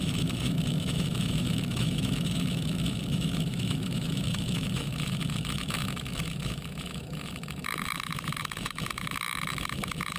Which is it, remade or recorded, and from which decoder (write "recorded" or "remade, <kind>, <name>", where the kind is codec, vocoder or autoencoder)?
remade, autoencoder, DAC-VAE